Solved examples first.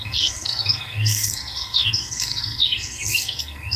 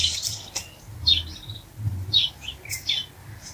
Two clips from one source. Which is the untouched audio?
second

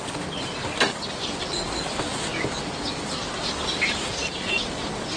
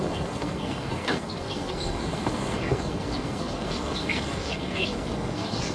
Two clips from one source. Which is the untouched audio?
first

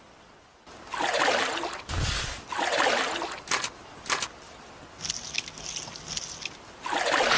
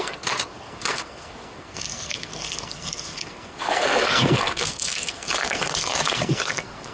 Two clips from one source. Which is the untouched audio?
first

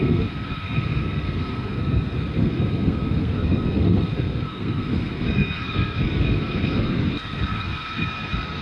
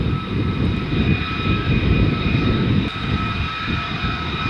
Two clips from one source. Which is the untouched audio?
second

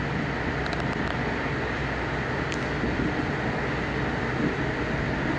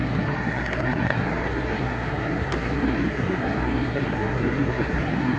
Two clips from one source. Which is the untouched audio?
first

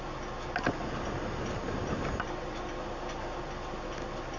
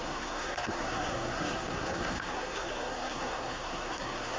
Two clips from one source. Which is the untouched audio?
first